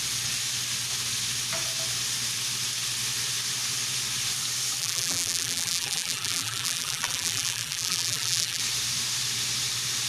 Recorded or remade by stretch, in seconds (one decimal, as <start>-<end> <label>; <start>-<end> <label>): 0.0-4.8 recorded; 4.8-8.6 remade; 8.6-10.1 recorded